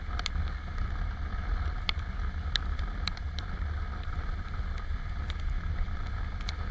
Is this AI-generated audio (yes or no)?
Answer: no